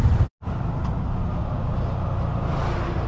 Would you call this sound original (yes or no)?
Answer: yes